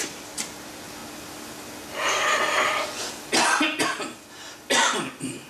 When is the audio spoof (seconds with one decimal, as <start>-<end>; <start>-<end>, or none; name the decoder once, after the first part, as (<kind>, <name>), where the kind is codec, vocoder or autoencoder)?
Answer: none